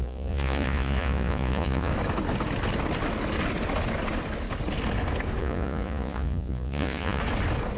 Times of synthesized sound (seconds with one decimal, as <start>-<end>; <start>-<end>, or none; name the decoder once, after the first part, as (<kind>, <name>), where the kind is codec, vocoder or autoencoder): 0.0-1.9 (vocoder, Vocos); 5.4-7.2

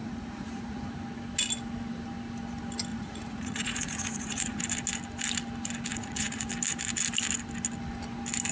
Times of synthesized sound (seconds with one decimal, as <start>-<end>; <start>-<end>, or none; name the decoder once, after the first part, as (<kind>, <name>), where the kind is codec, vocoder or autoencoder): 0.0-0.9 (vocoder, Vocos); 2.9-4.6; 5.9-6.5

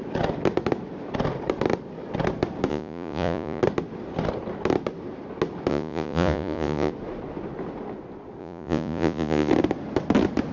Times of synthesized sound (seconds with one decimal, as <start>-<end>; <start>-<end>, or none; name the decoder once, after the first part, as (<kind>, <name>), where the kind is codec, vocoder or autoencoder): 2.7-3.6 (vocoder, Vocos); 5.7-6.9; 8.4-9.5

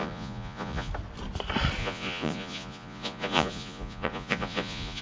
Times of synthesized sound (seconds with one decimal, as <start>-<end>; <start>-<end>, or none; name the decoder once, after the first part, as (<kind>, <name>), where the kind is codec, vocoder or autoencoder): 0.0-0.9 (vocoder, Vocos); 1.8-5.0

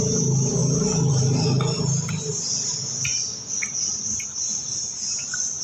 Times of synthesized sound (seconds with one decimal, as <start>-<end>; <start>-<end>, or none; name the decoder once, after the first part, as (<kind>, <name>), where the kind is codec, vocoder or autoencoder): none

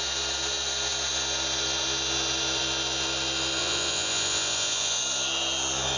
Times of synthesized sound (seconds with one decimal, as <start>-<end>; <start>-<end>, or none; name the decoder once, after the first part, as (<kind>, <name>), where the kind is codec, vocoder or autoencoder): 3.6-5.0 (vocoder, Vocos)